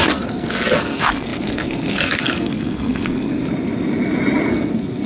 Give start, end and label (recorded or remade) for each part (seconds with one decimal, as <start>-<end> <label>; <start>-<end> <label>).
0.0-3.4 remade; 3.4-4.5 recorded; 4.5-5.1 remade